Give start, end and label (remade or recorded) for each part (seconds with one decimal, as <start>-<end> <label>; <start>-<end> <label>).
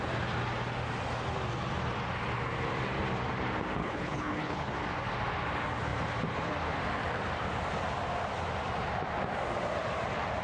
0.0-3.8 recorded; 3.8-4.7 remade; 4.7-10.4 recorded